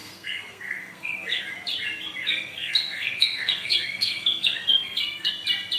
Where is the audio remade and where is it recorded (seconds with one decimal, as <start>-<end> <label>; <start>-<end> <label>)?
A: 0.0-1.4 remade; 1.4-2.2 recorded; 2.2-5.3 remade; 5.3-5.8 recorded